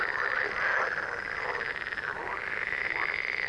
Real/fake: real